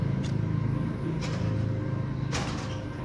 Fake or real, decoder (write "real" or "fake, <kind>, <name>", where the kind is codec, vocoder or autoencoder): real